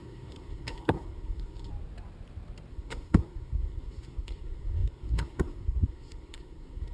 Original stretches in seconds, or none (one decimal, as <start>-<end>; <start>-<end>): 1.7-2.7